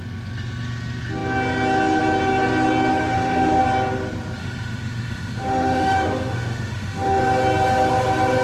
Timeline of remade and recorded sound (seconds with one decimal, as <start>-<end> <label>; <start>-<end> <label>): 0.0-2.9 recorded; 2.9-3.6 remade; 3.6-4.4 recorded; 4.4-7.2 remade; 7.2-8.4 recorded